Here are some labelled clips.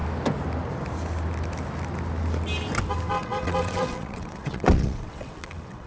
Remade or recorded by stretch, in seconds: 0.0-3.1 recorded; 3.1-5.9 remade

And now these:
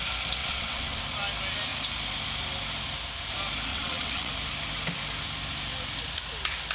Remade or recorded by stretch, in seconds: 0.0-0.4 recorded; 0.4-1.0 remade; 1.0-3.7 recorded; 3.7-4.3 remade; 4.3-6.7 recorded

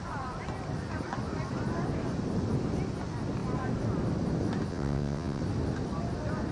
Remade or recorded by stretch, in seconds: 0.0-4.7 recorded; 4.7-5.4 remade; 5.4-6.5 recorded

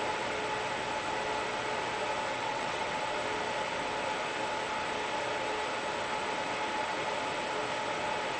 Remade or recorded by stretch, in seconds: 0.0-2.3 recorded; 2.3-2.9 remade; 2.9-8.4 recorded

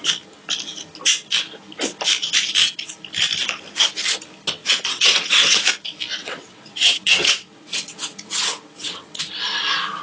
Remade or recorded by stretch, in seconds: 0.0-4.6 recorded; 4.6-5.7 remade; 5.7-6.2 recorded; 6.2-9.2 remade; 9.2-10.0 recorded

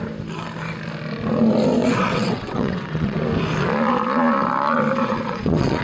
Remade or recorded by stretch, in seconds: 0.0-1.8 recorded; 1.8-3.2 remade; 3.2-5.0 recorded; 5.0-5.8 remade

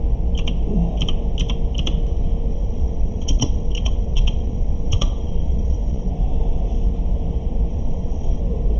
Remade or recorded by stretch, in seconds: 0.0-2.5 recorded; 2.5-6.1 remade; 6.1-7.7 recorded; 7.7-8.4 remade; 8.4-8.8 recorded